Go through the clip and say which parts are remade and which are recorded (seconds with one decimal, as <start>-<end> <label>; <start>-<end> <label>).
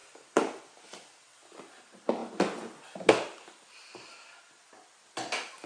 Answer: 0.0-5.7 recorded